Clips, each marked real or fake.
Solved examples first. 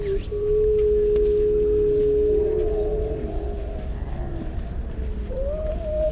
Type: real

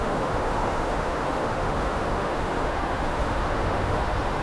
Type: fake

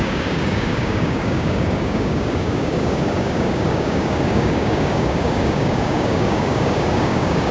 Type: fake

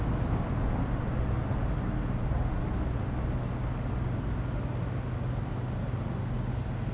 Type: real